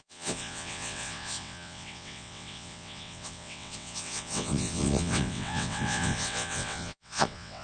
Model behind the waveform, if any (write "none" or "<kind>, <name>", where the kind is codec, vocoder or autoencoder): vocoder, WaveNeXt